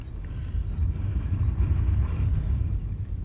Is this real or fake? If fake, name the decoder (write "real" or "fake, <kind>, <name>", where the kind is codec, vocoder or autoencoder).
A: real